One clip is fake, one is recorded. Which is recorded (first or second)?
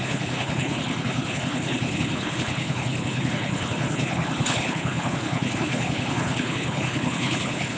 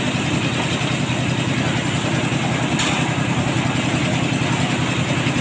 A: second